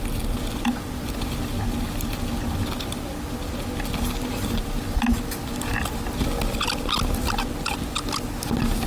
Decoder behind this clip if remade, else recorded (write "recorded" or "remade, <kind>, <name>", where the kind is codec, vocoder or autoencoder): recorded